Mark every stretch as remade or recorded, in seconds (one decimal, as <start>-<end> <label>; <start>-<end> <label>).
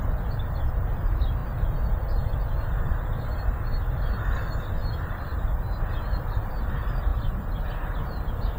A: 0.0-8.6 recorded